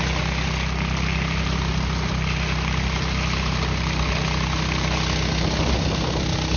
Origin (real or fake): real